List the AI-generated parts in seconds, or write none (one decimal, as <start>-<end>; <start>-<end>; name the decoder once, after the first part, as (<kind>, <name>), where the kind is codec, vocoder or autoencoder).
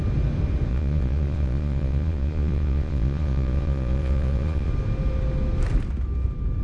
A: 0.7-4.7 (vocoder, Vocos)